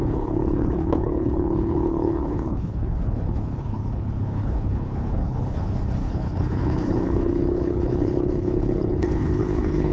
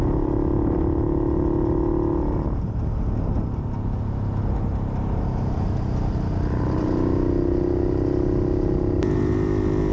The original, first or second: second